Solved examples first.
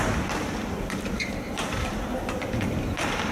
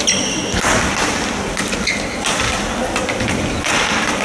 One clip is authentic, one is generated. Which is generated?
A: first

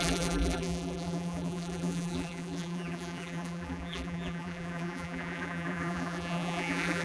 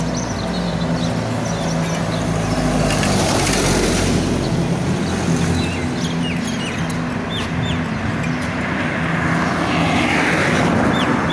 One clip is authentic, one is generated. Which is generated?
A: first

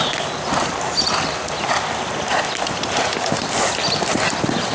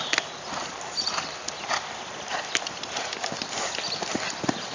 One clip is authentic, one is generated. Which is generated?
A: second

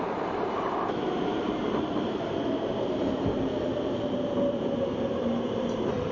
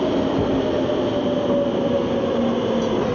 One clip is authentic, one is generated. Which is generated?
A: first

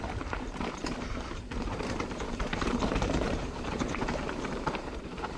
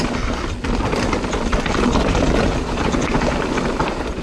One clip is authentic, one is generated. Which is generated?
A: first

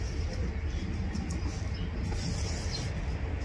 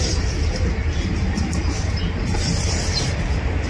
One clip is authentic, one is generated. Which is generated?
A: second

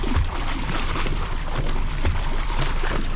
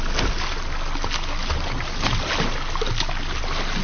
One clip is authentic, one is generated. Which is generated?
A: first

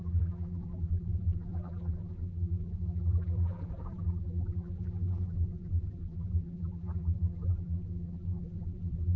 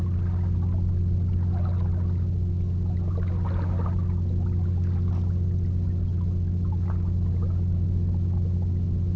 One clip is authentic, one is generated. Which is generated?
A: first